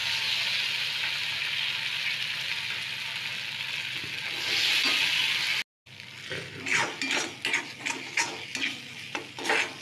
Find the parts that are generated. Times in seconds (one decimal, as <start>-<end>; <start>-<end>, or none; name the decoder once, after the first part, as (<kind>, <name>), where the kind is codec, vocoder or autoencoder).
none